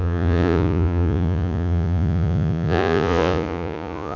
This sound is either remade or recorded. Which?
remade